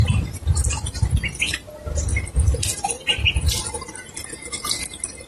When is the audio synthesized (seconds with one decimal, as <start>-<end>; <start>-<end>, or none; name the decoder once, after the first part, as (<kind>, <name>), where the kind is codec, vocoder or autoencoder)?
none